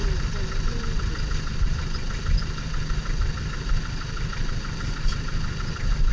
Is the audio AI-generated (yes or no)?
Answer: no